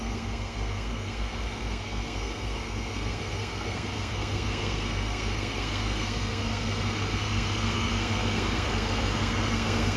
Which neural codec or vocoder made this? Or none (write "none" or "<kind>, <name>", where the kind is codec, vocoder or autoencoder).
codec, SNAC